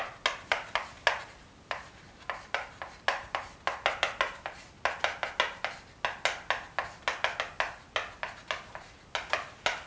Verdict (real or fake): real